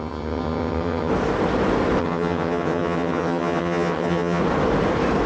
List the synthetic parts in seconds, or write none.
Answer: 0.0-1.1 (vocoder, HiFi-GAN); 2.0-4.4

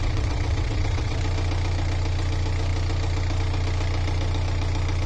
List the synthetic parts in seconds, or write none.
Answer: 0.0-1.2 (vocoder, WaveNeXt)